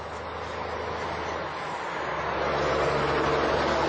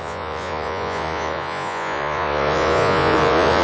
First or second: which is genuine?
first